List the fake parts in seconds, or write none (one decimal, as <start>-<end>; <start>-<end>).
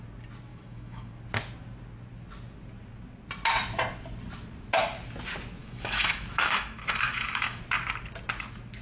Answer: 0.5-1.1; 5.6-7.6